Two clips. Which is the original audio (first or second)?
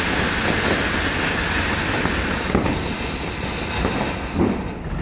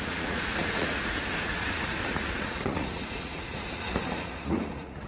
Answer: first